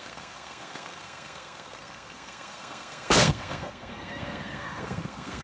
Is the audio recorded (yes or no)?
no